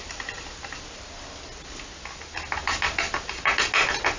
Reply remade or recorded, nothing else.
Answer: recorded